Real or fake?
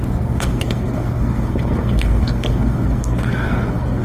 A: fake